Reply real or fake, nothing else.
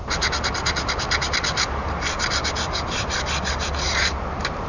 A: real